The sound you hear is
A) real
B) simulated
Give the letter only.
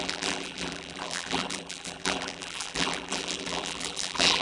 B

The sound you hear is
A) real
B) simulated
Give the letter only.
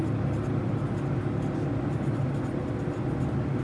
A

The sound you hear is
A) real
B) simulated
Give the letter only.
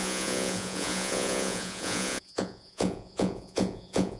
B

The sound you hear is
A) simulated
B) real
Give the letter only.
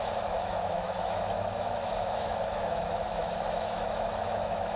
A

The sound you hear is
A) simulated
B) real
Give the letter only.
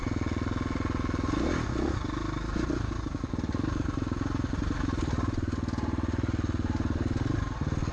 B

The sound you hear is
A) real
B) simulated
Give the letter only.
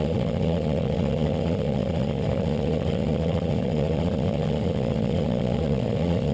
B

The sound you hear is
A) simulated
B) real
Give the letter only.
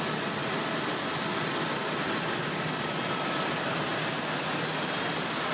B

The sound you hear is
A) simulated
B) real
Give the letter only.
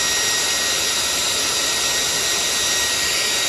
B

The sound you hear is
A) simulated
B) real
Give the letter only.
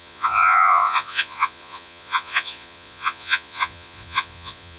A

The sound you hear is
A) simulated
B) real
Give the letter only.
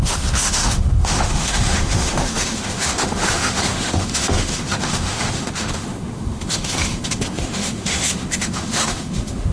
A